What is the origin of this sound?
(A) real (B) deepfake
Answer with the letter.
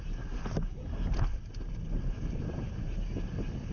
A